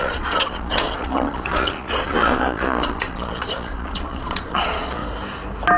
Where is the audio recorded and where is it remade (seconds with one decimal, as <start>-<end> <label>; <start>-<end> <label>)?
0.0-5.0 remade; 5.0-5.8 recorded